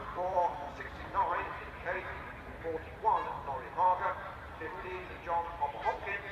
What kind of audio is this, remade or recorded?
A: remade